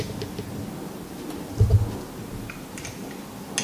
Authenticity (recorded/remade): recorded